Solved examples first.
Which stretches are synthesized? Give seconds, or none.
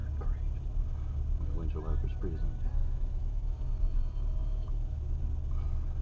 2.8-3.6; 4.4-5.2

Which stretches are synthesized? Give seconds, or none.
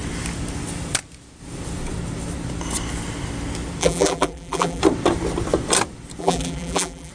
3.8-4.8; 6.2-7.1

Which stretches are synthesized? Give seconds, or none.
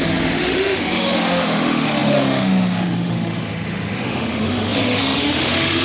0.0-5.8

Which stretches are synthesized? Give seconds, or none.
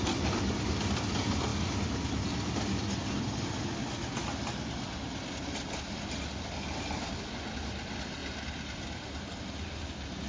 0.0-1.5; 5.7-10.3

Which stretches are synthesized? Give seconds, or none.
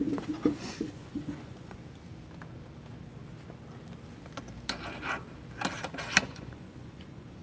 0.0-1.8; 6.2-7.4